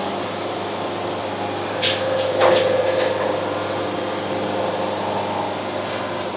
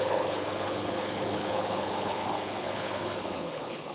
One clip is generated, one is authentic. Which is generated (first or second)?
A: second